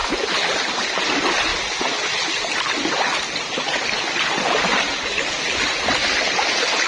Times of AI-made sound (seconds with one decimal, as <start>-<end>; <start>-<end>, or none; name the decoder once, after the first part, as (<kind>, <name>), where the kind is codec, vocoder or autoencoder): none